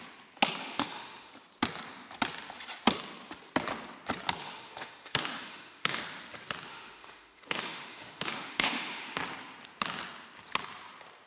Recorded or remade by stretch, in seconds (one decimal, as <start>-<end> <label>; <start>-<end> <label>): 0.0-0.6 recorded; 0.6-1.3 remade; 1.3-4.4 recorded; 4.4-6.0 remade; 6.0-6.7 recorded; 6.7-9.2 remade; 9.2-11.3 recorded